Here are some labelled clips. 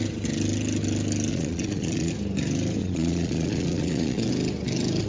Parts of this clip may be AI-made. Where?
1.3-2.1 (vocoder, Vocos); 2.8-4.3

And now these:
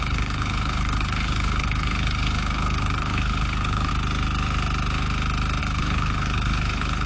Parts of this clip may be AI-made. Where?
0.0-3.9 (codec, HILCodec); 5.6-7.1

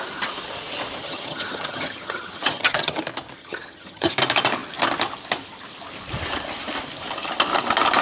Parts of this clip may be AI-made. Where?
1.0-3.0 (vocoder, HiFi-GAN); 3.4-4.1

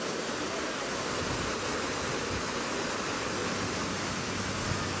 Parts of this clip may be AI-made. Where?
1.7-2.9 (vocoder, BigVGAN v2); 3.4-4.6

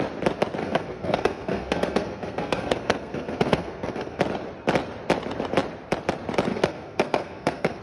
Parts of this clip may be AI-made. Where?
0.6-4.2 (codec, SNAC); 6.5-7.8

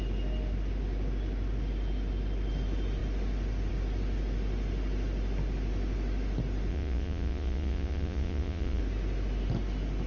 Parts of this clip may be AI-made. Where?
6.7-8.8 (vocoder, Vocos)

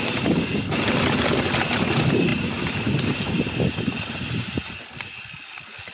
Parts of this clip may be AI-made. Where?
none

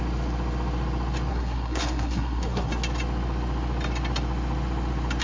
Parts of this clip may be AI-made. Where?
1.3-2.7 (codec, SNAC)